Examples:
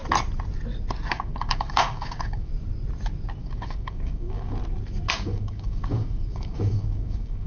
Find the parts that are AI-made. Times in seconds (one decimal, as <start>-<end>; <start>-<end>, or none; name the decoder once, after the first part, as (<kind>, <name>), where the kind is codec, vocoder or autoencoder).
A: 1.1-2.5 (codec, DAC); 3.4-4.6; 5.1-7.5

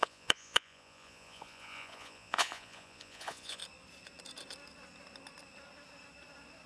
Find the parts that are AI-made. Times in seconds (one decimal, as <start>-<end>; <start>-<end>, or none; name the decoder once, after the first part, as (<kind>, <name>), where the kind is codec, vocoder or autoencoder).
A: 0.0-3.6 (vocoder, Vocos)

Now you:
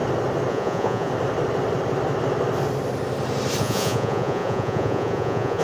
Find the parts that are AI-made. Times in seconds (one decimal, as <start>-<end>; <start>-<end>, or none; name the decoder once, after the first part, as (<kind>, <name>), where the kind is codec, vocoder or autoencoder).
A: 0.5-1.1 (vocoder, Vocos); 3.6-5.6

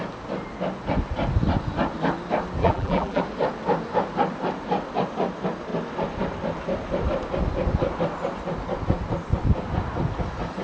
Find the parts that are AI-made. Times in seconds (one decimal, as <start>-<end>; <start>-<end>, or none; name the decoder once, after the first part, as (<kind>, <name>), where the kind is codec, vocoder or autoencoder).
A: 2.6-3.2 (vocoder, BigVGAN v2)

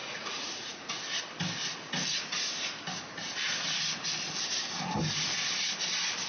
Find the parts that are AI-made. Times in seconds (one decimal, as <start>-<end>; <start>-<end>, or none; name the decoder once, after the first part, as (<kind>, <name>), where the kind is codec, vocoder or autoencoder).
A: 0.0-1.0 (vocoder, Vocos)